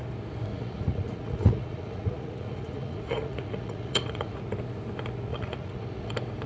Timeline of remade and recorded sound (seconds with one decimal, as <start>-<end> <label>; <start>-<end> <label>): 0.0-0.5 recorded; 0.5-4.4 remade; 4.4-5.3 recorded; 5.3-6.1 remade; 6.1-6.5 recorded